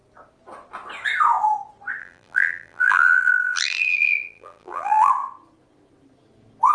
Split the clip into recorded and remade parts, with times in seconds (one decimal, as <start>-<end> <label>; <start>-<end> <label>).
0.0-2.0 recorded; 2.0-5.1 remade; 5.1-6.7 recorded